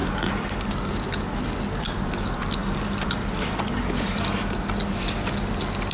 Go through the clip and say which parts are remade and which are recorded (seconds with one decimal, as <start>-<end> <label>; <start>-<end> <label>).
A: 0.0-0.7 remade; 0.7-2.6 recorded; 2.6-4.3 remade; 4.3-5.9 recorded